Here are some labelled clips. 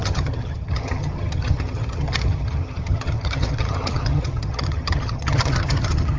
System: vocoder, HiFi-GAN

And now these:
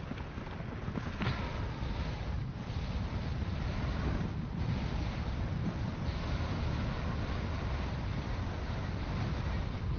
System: none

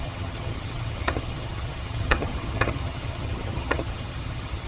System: vocoder, HiFi-GAN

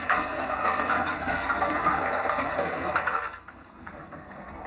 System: codec, SNAC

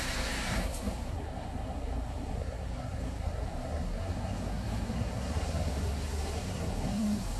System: codec, SNAC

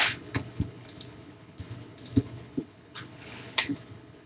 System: codec, HILCodec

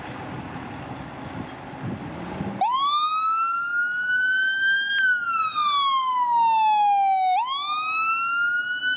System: none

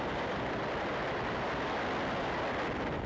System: none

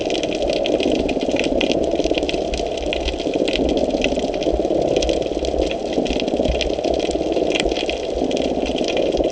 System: none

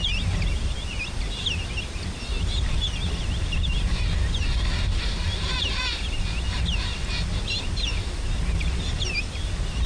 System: none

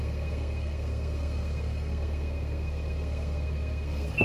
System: codec, SNAC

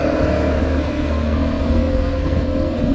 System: codec, SNAC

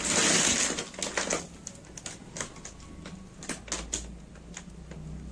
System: none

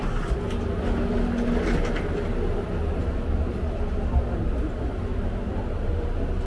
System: none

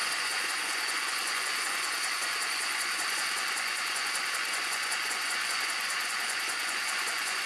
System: vocoder, Vocos